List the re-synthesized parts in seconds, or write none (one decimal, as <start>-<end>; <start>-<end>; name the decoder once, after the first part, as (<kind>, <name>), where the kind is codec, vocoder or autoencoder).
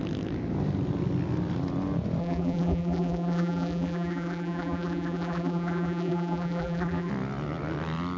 2.2-7.1 (vocoder, BigVGAN v2)